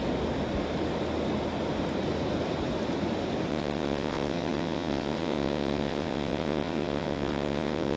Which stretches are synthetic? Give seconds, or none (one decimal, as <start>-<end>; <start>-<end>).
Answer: 3.5-8.0